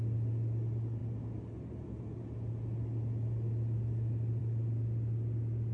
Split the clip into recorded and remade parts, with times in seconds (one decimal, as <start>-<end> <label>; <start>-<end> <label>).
0.0-5.7 recorded